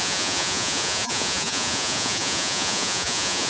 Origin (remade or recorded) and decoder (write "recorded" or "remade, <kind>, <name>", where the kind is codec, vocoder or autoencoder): remade, vocoder, Vocos